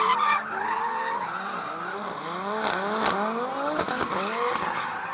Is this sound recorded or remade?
recorded